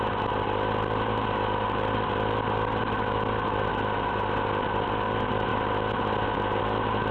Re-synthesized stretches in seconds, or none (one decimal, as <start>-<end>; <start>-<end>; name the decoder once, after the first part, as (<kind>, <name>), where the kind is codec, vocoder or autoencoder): none